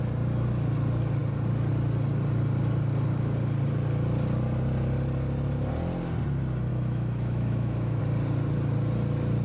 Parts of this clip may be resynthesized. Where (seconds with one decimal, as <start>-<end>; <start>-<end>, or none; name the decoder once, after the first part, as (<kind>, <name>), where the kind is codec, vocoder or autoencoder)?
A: 6.7-8.0 (autoencoder, DAC-VAE)